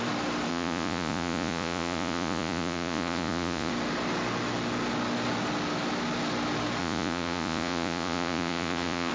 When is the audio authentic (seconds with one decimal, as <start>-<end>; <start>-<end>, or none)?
0.0-0.5; 3.7-6.8